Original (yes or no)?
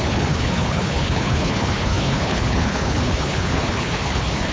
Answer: no